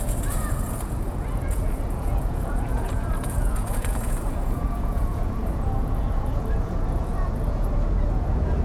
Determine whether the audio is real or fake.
fake